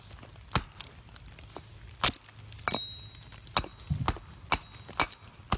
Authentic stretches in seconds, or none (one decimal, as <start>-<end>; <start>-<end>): 0.0-5.6